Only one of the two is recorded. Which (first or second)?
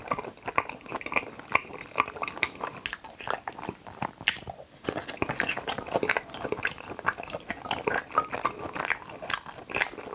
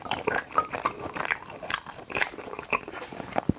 first